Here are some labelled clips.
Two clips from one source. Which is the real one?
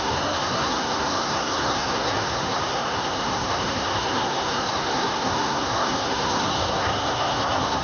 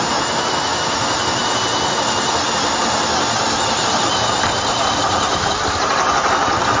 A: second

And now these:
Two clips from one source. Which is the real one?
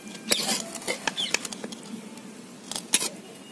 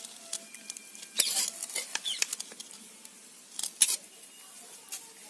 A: first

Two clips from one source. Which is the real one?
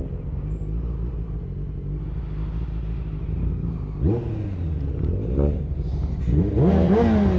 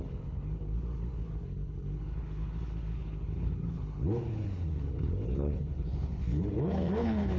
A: first